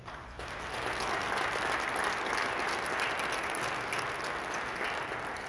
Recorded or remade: recorded